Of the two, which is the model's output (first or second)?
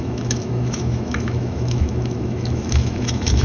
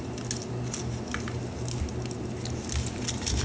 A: first